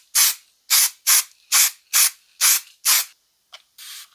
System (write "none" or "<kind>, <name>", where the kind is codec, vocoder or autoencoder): none